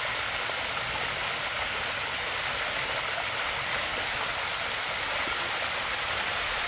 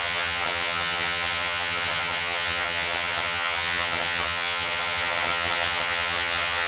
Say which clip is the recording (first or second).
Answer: first